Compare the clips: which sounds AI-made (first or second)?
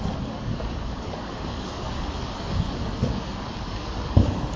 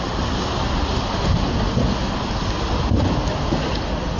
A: first